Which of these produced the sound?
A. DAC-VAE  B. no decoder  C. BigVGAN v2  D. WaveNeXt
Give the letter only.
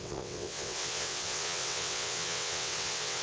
D